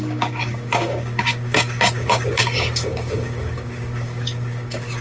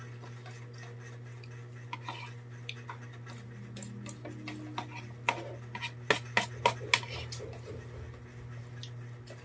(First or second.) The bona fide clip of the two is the second